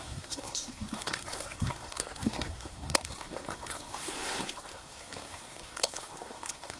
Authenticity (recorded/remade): remade